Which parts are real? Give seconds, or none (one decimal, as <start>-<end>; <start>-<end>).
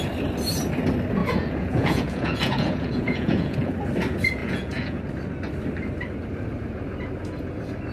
0.0-1.2; 3.7-4.4; 5.0-7.9